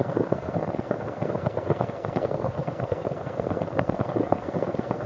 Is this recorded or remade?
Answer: remade